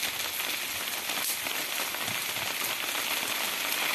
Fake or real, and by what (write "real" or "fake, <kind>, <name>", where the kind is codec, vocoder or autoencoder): real